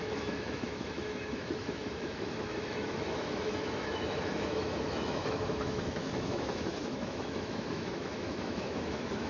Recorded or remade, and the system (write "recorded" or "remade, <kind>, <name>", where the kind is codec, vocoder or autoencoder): remade, autoencoder, DAC-VAE